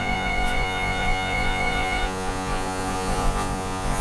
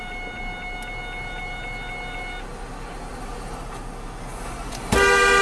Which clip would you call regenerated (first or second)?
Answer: first